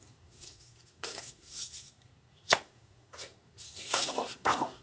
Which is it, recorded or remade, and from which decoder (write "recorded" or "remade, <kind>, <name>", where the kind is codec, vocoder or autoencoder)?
remade, codec, SNAC